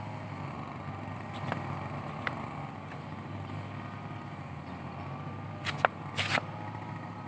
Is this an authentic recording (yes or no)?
yes